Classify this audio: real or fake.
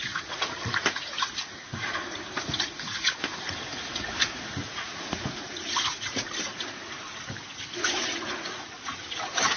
fake